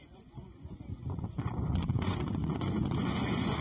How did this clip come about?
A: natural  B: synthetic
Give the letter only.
B